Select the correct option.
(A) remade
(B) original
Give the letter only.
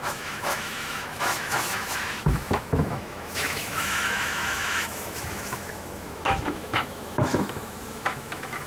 A